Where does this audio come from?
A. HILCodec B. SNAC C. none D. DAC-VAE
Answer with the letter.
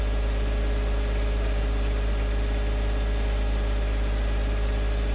C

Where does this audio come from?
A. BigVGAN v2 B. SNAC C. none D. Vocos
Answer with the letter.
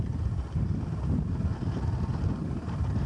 C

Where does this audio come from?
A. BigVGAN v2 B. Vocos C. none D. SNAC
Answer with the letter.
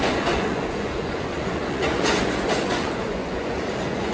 B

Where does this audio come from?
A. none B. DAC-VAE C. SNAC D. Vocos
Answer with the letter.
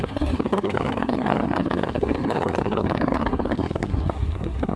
C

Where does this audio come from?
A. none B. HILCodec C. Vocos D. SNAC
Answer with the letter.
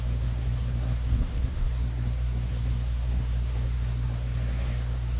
D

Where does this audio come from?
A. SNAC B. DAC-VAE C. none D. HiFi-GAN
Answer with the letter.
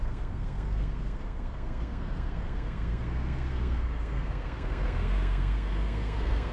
A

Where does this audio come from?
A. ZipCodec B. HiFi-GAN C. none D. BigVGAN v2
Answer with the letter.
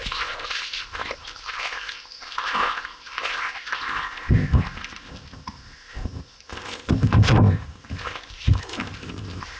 A